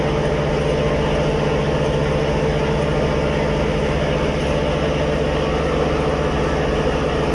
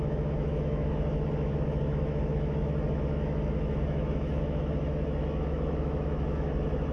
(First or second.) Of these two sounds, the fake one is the second